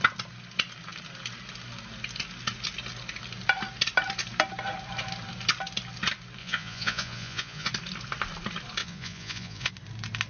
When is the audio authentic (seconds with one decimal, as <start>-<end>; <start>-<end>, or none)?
0.0-6.4; 7.7-8.8; 9.7-10.3

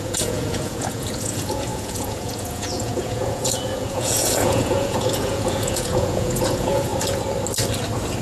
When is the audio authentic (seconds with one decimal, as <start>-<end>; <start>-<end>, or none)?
6.9-8.2

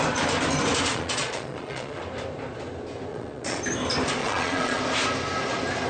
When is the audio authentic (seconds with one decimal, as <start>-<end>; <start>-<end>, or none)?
0.0-0.9; 2.0-3.1; 3.6-4.2; 4.8-5.9